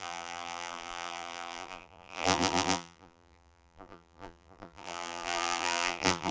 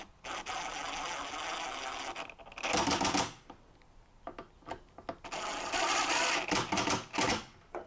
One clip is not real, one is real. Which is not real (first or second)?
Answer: first